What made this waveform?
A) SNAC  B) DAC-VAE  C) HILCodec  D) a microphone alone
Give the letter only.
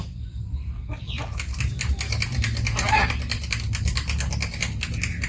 D